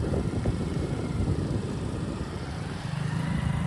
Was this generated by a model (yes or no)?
yes